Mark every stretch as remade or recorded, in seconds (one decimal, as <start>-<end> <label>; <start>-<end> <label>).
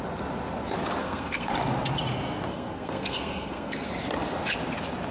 0.0-1.0 recorded; 1.0-1.5 remade; 1.5-2.5 recorded; 2.5-3.9 remade; 3.9-5.1 recorded